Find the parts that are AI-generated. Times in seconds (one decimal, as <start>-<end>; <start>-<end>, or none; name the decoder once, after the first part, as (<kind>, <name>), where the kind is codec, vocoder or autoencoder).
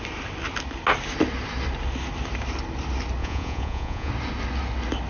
3.2-4.1 (vocoder, Vocos)